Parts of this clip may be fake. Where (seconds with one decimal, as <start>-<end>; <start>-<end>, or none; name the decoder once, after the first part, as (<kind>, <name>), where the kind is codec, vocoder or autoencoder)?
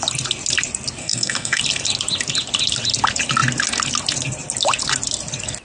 1.0-1.6 (codec, SNAC)